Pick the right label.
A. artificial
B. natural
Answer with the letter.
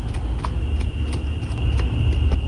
B